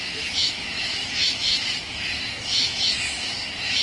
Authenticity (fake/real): fake